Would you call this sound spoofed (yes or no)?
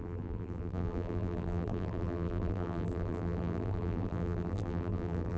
yes